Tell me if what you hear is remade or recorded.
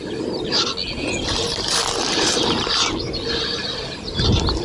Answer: recorded